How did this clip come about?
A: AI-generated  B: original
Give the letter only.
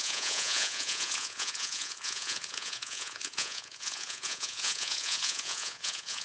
A